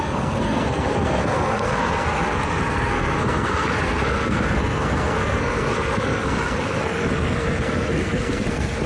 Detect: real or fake fake